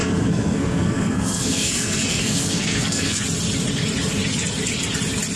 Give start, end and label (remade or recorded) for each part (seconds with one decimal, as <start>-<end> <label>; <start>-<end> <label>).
0.0-3.2 remade; 3.2-5.4 recorded